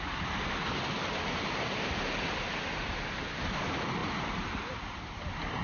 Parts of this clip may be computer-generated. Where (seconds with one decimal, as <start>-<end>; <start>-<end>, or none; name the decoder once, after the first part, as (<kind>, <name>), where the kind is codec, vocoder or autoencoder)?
none